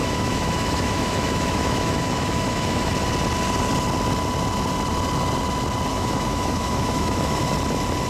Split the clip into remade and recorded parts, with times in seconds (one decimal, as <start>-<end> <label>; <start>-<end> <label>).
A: 0.0-2.9 remade; 2.9-5.9 recorded; 5.9-7.4 remade; 7.4-8.1 recorded